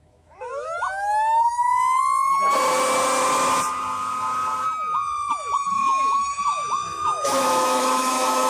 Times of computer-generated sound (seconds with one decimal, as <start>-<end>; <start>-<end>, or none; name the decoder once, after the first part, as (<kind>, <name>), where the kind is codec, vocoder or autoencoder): 0.0-2.0 (autoencoder, DAC-VAE); 5.7-8.5